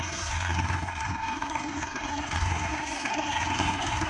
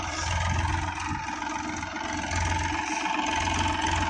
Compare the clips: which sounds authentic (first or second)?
second